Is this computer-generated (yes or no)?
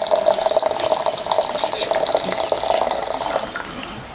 no